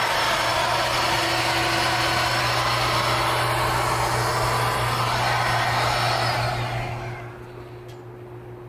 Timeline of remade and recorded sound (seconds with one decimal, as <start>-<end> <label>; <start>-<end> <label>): 0.0-0.5 recorded; 0.5-2.4 remade; 2.4-8.7 recorded